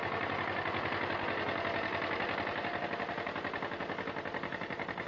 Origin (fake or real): real